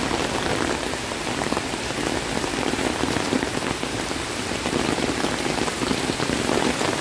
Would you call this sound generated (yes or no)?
no